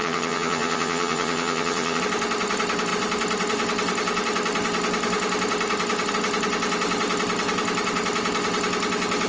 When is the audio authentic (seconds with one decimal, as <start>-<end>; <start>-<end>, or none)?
2.0-9.3